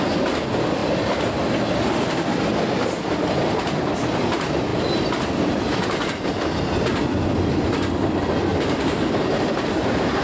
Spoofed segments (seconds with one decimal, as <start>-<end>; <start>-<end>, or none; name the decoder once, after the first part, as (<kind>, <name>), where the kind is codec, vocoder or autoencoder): 8.5-10.2 (vocoder, BigVGAN v2)